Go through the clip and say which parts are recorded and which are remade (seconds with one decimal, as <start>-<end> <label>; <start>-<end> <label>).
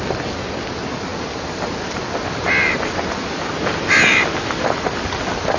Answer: 0.0-5.6 recorded